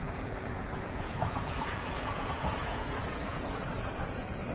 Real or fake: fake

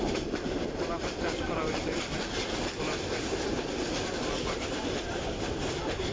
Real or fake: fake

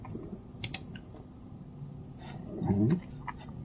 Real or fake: real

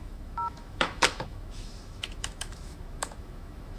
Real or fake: fake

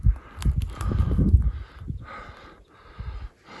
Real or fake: real